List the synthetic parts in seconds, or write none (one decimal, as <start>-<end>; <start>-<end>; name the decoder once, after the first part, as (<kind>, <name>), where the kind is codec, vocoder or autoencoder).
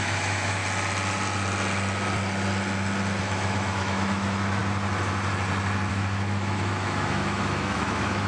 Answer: 0.0-0.6 (autoencoder, DAC-VAE); 3.2-4.6; 5.9-8.3